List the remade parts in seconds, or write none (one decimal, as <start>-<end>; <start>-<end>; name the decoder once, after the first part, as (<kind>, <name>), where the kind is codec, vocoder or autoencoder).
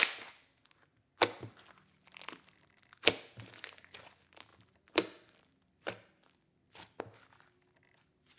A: 4.5-7.0 (vocoder, BigVGAN v2)